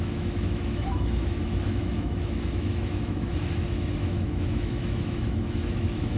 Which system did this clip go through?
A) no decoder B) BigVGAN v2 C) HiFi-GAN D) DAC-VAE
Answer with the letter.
D